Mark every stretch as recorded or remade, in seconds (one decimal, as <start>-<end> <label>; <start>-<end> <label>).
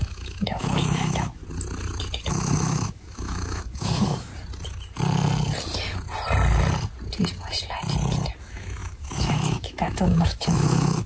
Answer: 0.0-1.4 remade; 1.4-2.3 recorded; 2.3-4.3 remade; 4.3-8.4 recorded; 8.4-11.1 remade